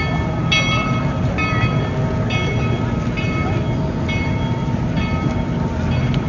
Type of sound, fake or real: real